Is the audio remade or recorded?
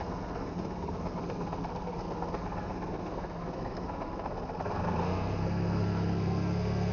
remade